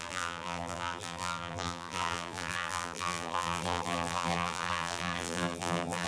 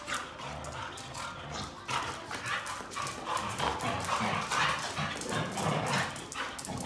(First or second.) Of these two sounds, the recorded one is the second